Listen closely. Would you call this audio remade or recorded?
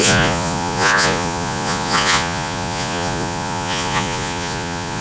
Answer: remade